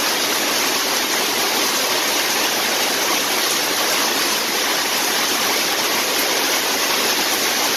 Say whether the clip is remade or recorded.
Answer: recorded